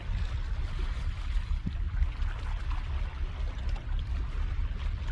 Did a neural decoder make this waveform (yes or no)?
no